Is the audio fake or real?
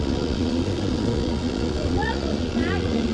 fake